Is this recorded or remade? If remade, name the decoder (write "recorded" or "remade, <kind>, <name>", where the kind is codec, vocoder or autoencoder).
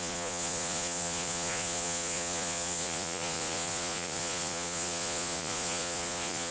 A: remade, vocoder, Vocos